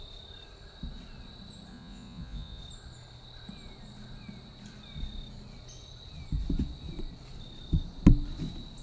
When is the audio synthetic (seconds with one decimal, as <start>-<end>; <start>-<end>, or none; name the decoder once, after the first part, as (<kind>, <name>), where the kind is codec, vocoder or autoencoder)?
1.7-2.6 (vocoder, Vocos)